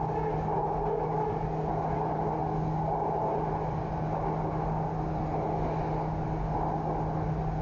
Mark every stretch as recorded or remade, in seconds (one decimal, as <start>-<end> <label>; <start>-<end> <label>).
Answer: 0.0-7.6 recorded